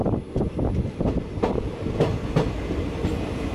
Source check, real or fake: real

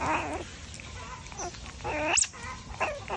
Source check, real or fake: real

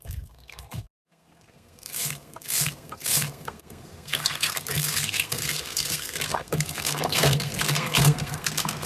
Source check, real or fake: fake